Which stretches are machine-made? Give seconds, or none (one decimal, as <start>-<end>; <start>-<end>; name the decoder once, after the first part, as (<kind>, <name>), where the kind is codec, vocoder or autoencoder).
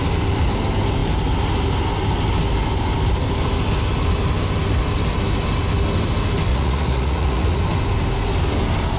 6.5-7.6 (vocoder, Vocos)